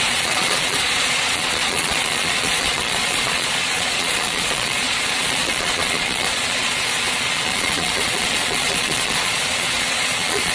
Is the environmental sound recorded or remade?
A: remade